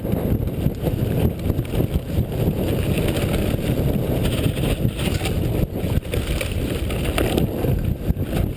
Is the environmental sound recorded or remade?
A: recorded